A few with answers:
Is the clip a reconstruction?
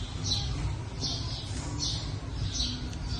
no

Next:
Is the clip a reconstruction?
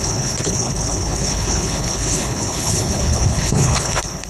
yes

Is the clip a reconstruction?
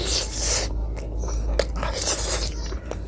no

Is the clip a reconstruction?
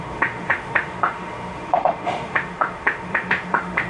yes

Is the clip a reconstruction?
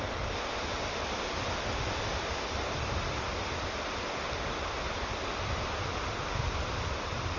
no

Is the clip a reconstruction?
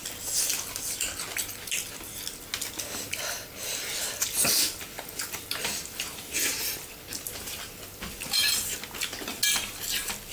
no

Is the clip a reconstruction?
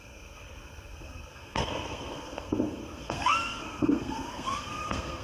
yes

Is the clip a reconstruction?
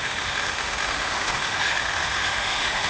yes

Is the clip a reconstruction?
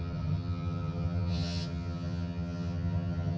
yes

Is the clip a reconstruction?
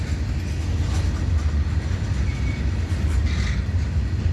no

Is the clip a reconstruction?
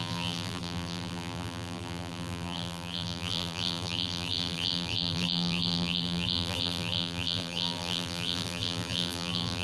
yes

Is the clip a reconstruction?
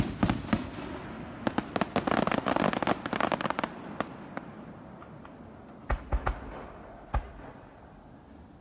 no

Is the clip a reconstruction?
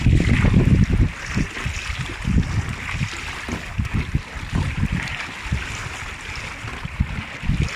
no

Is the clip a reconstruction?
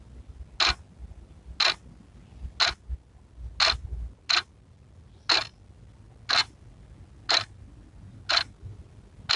no